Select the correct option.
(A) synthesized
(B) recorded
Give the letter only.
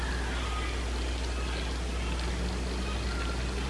B